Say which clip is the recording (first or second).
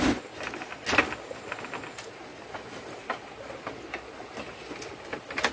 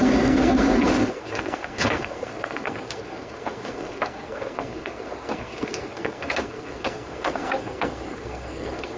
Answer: first